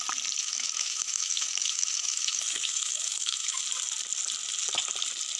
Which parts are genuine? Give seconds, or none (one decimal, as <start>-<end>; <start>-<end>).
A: 0.0-0.4; 3.6-5.4